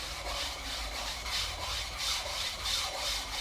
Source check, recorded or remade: remade